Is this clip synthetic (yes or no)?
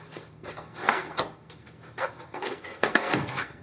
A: yes